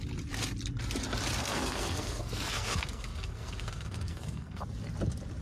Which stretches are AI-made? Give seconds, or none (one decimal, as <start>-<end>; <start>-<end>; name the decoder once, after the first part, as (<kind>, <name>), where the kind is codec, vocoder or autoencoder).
1.4-4.6 (codec, SNAC)